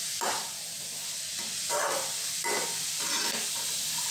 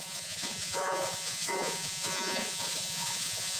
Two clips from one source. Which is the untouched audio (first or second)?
first